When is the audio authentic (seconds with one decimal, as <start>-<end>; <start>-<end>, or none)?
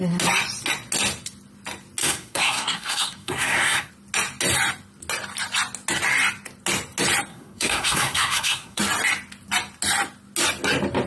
0.0-2.0; 3.9-7.3; 8.8-11.1